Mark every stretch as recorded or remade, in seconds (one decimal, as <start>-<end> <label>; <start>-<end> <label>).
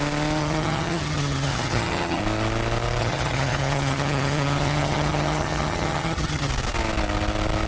0.0-0.4 recorded; 0.4-2.2 remade; 2.2-3.0 recorded; 3.0-6.5 remade; 6.5-7.7 recorded